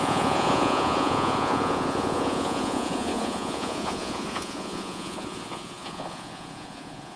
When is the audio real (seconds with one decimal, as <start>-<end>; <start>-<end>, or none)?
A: none